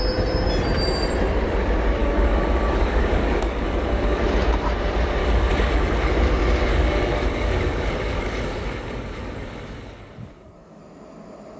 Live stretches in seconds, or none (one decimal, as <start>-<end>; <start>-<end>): 0.0-2.0; 4.2-5.2; 6.1-6.7; 10.8-11.6